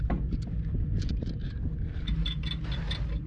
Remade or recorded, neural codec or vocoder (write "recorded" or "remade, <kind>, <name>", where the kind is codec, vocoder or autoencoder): recorded